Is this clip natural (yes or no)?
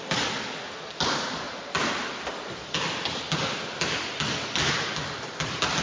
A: yes